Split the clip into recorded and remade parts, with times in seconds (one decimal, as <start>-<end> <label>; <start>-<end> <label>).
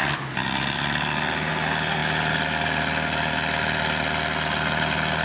0.0-5.2 recorded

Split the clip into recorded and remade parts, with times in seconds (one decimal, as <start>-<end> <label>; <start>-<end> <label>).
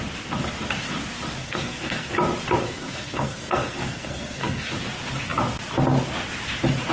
0.0-1.4 recorded; 1.4-2.1 remade; 2.1-2.6 recorded; 2.6-4.7 remade; 4.7-6.9 recorded